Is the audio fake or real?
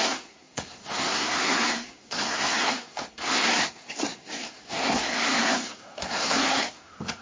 fake